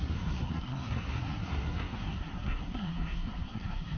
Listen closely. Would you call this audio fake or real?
fake